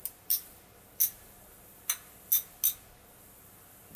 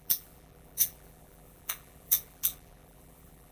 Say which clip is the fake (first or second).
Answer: second